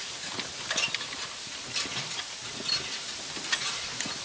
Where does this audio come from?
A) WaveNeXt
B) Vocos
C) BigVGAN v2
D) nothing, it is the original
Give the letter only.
D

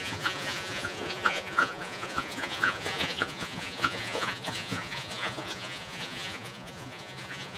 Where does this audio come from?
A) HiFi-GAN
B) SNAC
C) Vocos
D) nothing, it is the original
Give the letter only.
C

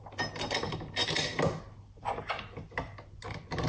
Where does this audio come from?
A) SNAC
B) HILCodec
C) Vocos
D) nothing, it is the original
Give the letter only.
D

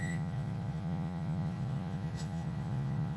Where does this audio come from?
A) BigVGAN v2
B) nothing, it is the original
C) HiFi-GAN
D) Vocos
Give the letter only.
D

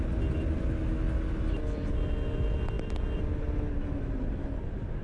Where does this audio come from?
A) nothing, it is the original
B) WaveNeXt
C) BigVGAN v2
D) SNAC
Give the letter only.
A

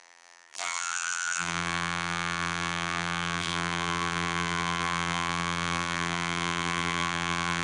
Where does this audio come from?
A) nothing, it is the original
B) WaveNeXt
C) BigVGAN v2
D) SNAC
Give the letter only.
C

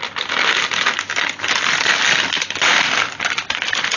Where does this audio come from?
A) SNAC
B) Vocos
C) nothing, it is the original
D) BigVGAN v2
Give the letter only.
C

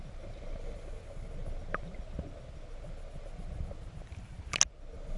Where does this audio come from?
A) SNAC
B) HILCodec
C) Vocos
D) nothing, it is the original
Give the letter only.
D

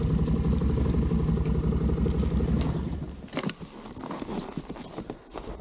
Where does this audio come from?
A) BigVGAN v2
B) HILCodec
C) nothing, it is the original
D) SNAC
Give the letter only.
C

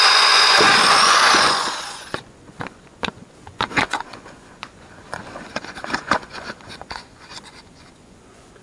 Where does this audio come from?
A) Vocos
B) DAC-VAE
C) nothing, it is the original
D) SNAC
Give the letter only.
A